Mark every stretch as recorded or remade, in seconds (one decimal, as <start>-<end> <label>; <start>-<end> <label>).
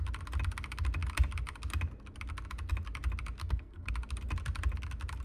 0.0-3.4 recorded; 3.4-3.9 remade; 3.9-5.2 recorded